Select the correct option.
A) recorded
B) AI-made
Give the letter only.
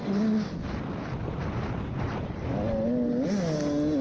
A